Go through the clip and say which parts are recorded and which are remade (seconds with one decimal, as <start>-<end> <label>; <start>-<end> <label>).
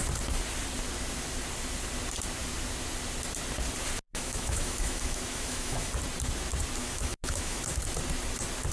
0.0-4.1 recorded; 4.1-5.9 remade; 5.9-6.8 recorded; 6.8-7.6 remade; 7.6-8.7 recorded